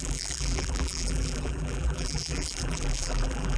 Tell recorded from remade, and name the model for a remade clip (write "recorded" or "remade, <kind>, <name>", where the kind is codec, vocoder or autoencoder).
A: remade, vocoder, BigVGAN v2